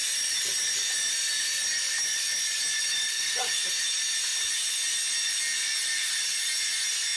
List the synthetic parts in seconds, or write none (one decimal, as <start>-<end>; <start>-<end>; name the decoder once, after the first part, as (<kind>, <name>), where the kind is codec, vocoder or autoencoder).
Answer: 3.1-3.6 (codec, SNAC)